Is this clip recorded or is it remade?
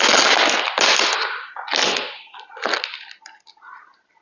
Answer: recorded